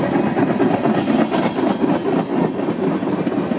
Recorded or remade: recorded